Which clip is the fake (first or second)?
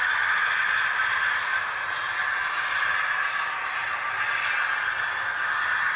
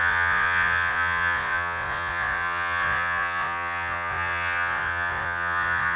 second